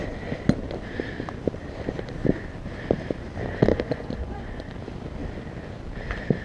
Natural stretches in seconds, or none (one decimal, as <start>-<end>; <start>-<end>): 0.0-3.7; 4.7-6.4